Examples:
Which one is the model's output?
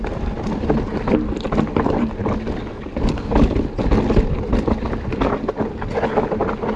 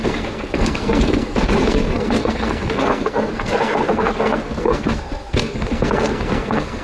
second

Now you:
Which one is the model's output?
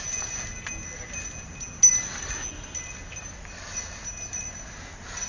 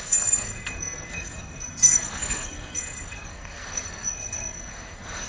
second